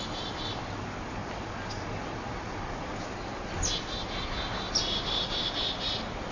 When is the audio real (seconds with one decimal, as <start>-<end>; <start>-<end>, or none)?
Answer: 0.0-6.3